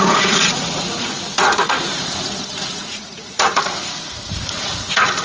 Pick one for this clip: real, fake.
fake